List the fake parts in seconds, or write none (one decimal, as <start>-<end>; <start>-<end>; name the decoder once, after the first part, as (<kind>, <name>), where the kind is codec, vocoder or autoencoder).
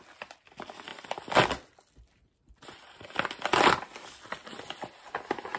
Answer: none